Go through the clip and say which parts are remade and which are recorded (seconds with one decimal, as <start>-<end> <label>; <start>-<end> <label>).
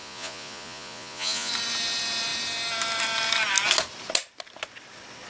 0.0-1.5 remade; 1.5-5.3 recorded